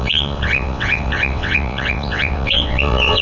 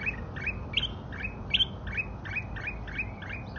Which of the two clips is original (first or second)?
second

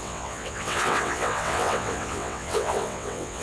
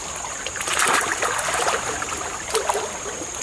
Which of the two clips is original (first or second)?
second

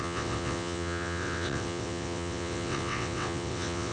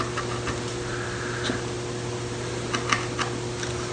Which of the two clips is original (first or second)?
second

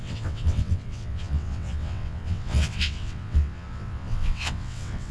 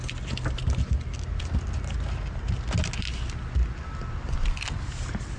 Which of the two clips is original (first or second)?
second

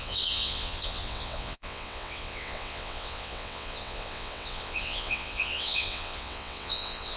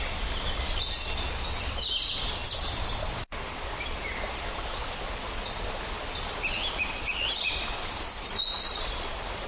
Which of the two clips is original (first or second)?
second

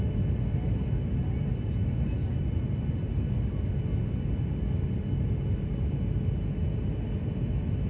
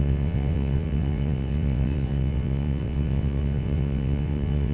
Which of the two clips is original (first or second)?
first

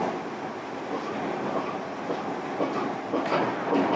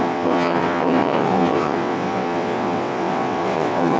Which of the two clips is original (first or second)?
first